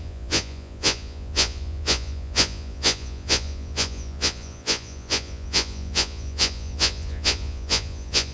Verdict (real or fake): fake